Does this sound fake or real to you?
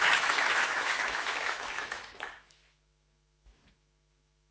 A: fake